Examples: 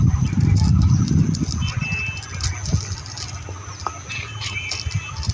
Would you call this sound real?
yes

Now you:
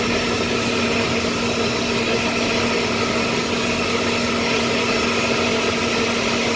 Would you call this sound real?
yes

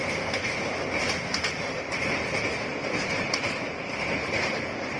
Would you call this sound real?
yes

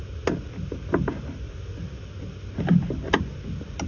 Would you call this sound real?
yes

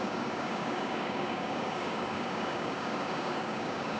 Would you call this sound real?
no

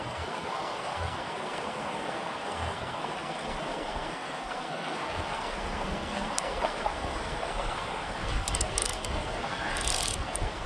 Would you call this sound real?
no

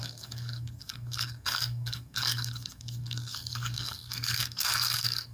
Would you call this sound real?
no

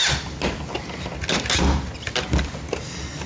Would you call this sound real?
yes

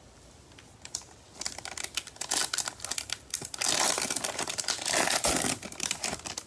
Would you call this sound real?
yes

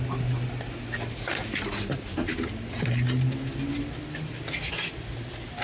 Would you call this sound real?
yes